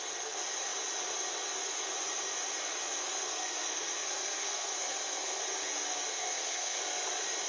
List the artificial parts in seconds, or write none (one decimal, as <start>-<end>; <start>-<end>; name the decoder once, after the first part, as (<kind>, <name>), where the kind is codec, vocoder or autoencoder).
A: 3.0-5.4 (codec, SNAC); 6.1-6.8

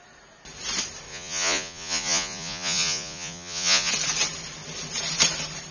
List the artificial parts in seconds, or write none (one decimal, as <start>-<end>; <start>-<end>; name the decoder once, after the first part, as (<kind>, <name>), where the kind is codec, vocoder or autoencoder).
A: 1.1-3.9 (vocoder, Vocos)

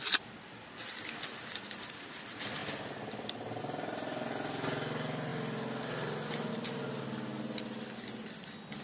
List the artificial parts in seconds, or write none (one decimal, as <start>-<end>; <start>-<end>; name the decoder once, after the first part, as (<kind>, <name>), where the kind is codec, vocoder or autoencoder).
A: none

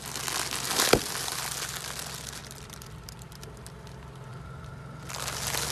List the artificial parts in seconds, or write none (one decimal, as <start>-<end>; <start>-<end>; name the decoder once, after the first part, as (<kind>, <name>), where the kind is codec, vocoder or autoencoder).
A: 2.4-3.6 (vocoder, BigVGAN v2); 4.3-4.8

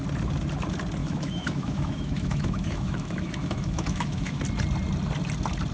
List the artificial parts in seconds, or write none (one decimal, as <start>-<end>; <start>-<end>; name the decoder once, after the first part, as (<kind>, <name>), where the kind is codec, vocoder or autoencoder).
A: 1.0-4.4 (autoencoder, DAC-VAE)

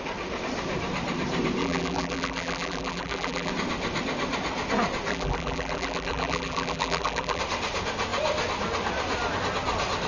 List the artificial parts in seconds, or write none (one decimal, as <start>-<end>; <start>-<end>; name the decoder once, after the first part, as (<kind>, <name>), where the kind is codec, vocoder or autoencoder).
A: 1.6-3.5 (vocoder, BigVGAN v2); 5.1-7.4

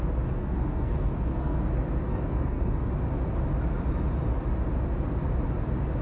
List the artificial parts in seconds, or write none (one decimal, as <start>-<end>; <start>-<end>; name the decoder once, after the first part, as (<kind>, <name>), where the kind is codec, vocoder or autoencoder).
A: 0.4-1.7 (codec, SNAC); 2.1-2.9

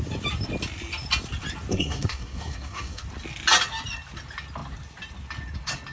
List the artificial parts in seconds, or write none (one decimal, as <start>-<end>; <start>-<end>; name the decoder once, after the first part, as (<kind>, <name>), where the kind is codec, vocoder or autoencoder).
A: 1.7-3.0 (codec, SNAC)